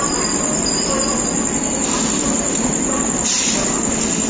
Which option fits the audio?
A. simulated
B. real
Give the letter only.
B